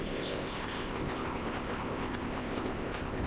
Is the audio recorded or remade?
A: remade